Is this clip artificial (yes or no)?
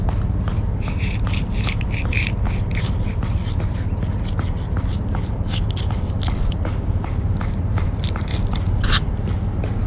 no